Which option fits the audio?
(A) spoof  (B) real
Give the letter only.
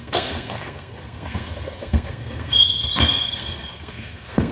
A